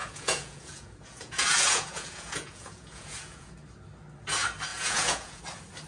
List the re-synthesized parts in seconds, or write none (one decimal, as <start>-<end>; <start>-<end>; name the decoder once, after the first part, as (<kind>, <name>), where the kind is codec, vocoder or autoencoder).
0.0-3.5 (vocoder, Vocos); 4.7-5.4